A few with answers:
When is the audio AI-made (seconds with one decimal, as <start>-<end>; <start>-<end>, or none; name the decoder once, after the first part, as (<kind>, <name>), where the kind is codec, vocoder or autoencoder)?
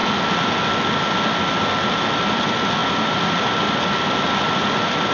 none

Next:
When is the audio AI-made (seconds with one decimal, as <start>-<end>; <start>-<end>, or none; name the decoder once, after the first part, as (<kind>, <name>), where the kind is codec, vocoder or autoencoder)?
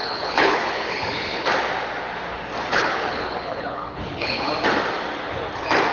0.0-1.5 (codec, HILCodec); 2.7-4.5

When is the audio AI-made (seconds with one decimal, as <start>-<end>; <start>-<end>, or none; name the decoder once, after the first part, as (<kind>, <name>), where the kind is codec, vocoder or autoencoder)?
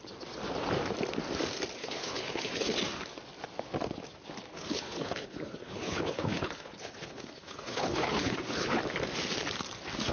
1.8-2.7 (codec, HILCodec); 4.5-8.8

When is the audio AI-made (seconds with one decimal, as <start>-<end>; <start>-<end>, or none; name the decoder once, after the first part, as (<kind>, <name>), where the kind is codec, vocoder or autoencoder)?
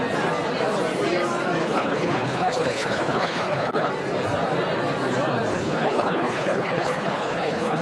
1.6-3.9 (codec, HILCodec); 5.5-7.8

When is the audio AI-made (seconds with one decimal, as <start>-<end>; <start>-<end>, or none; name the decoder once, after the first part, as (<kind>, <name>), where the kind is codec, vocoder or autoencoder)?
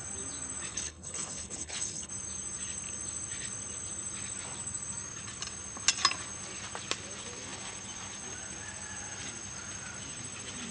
0.7-2.1 (codec, HILCodec)